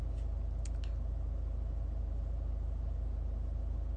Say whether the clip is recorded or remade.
recorded